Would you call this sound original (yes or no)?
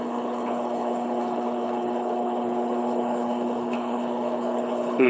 no